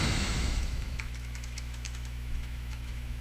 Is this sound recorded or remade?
remade